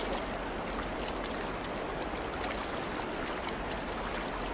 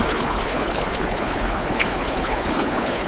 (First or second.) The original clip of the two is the first